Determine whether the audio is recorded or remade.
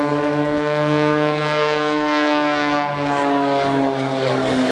remade